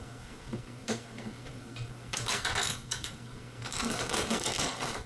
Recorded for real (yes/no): no